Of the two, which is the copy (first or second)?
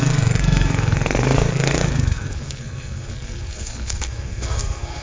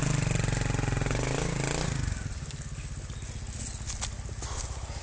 first